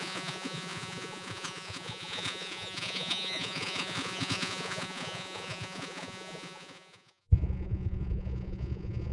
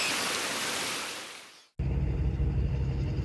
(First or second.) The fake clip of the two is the first